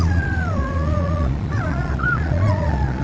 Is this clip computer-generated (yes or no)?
yes